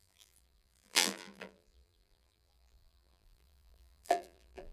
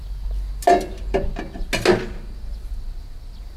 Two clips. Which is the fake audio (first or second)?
first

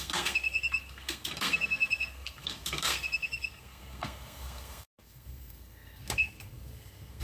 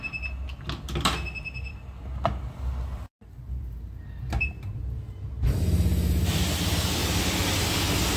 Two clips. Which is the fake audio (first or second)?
first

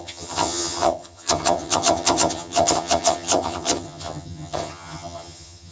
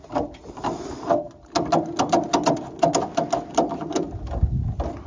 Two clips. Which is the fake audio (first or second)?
first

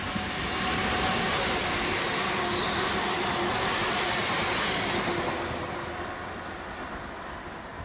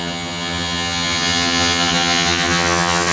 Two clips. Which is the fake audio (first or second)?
second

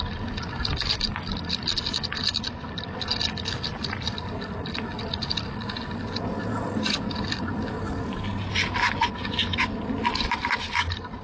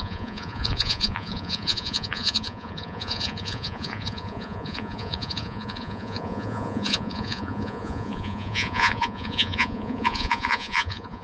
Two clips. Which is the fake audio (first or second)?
second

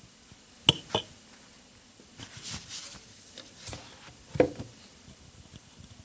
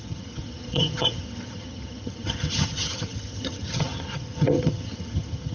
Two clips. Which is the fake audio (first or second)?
second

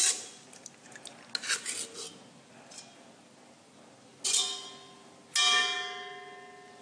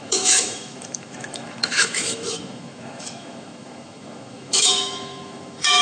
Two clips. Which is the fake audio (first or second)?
second